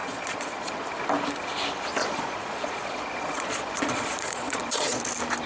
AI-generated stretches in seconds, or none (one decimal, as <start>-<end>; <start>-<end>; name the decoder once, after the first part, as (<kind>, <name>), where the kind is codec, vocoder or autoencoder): 0.0-0.7 (vocoder, Vocos); 2.0-5.0

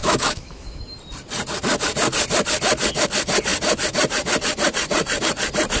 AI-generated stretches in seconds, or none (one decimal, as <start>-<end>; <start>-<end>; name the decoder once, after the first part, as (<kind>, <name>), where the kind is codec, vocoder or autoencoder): 0.0-0.8 (autoencoder, DAC-VAE)